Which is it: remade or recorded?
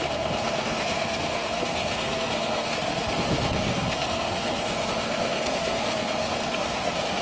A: remade